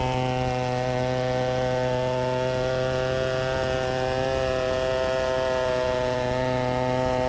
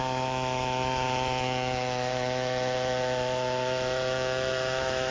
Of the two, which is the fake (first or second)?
second